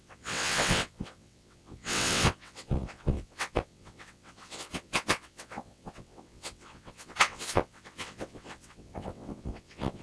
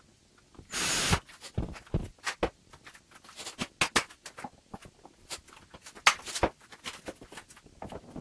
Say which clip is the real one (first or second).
second